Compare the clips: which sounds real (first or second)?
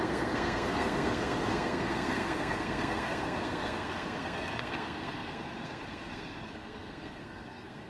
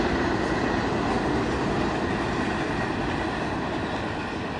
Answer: second